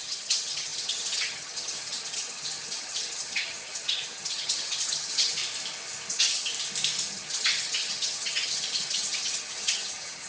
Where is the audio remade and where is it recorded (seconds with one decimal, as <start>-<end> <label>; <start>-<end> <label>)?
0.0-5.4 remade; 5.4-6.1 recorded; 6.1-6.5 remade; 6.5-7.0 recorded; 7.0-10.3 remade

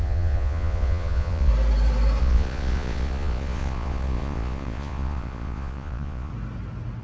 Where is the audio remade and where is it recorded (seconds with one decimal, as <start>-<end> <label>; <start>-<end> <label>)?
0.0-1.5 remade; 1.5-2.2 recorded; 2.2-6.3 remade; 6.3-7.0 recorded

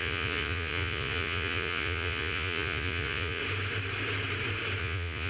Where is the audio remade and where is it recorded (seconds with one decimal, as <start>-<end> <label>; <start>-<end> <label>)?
0.0-3.4 remade; 3.4-4.8 recorded; 4.8-5.3 remade

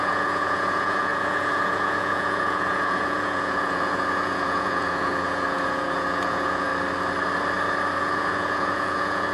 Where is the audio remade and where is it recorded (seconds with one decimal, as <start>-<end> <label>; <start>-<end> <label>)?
0.0-6.7 remade; 6.7-8.0 recorded; 8.0-9.3 remade

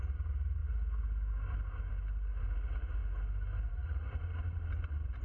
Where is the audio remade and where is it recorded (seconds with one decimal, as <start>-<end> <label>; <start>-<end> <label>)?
0.0-0.6 remade; 0.6-2.4 recorded; 2.4-3.0 remade; 3.0-3.7 recorded; 3.7-5.2 remade